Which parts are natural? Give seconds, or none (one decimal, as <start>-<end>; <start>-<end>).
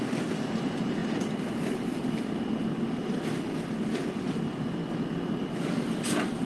1.0-2.6; 4.8-5.4